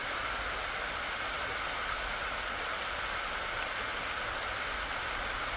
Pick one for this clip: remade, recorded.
recorded